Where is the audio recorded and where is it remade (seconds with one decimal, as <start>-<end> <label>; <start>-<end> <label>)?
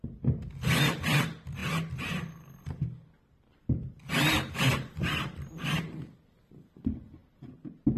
0.0-8.0 recorded